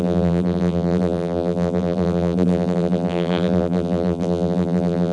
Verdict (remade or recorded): remade